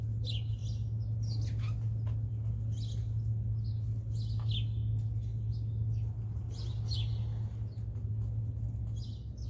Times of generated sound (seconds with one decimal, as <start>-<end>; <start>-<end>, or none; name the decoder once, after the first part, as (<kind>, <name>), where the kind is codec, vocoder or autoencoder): none